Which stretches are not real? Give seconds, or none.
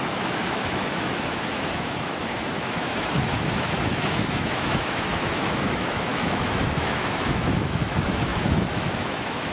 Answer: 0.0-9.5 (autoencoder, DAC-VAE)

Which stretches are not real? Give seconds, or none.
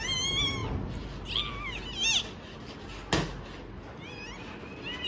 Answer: none